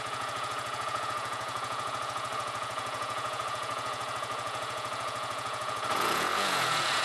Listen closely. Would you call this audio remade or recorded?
remade